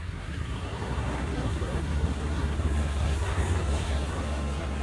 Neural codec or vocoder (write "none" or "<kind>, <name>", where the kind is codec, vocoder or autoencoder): codec, SNAC